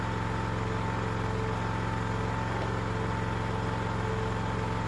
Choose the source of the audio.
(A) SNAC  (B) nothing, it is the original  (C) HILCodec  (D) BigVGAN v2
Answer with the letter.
B